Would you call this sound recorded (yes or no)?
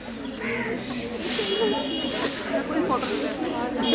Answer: yes